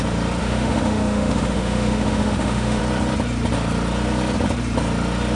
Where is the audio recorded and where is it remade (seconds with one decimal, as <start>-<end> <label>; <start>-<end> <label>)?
0.0-0.4 recorded; 0.4-2.8 remade; 2.8-5.4 recorded